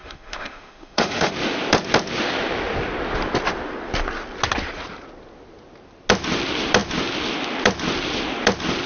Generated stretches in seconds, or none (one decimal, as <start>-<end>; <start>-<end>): 0.0-1.3